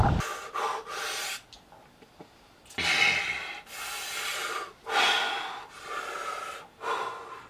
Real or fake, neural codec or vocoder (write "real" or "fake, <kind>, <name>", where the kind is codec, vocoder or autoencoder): real